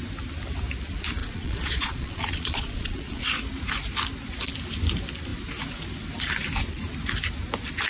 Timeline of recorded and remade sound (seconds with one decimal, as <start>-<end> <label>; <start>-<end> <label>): 0.0-1.2 recorded; 1.2-3.2 remade; 3.2-7.9 recorded